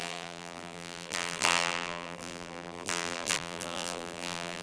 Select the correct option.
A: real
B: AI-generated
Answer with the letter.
B